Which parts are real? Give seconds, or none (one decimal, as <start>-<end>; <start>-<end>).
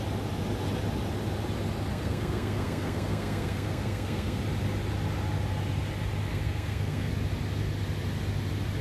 0.0-1.9; 4.4-6.3; 7.1-8.8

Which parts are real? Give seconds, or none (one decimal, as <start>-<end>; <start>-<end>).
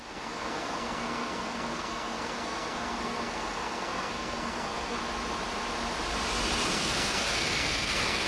5.0-6.7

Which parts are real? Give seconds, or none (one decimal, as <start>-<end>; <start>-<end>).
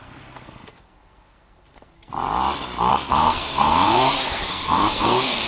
2.1-2.9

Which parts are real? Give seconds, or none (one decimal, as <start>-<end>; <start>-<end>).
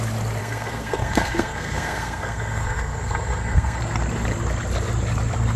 0.0-0.4; 3.8-5.6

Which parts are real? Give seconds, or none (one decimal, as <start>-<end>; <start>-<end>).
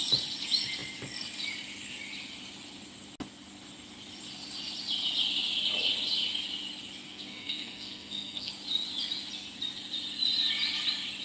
0.0-7.1; 8.5-11.2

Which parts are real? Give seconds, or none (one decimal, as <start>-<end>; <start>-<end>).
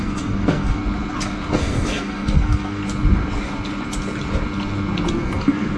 0.8-1.5; 2.8-5.1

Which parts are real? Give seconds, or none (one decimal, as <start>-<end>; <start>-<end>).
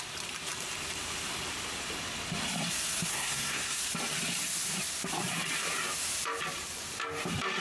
0.0-3.1; 3.8-7.6